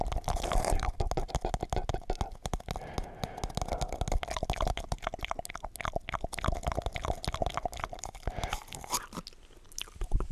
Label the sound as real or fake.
real